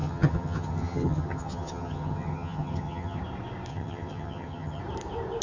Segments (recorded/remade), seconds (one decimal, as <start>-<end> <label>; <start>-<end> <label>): 0.0-3.2 remade; 3.2-3.7 recorded; 3.7-4.8 remade; 4.8-5.4 recorded